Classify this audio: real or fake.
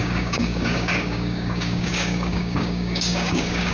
fake